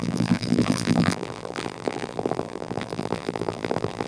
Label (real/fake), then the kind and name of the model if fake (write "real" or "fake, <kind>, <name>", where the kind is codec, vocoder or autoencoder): fake, vocoder, BigVGAN v2